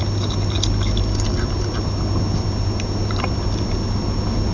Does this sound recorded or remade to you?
recorded